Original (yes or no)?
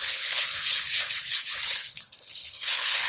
no